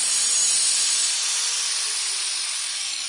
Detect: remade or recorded recorded